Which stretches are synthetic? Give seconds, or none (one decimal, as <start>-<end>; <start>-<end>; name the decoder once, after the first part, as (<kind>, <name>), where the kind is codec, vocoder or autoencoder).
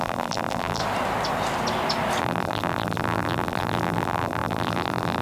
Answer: 0.0-0.8 (vocoder, BigVGAN v2); 2.2-5.2